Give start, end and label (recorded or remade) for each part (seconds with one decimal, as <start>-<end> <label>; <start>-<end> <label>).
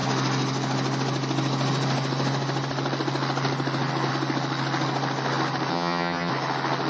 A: 0.0-5.7 recorded; 5.7-6.3 remade; 6.3-6.9 recorded